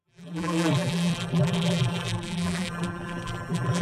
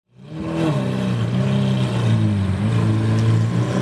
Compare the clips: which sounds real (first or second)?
second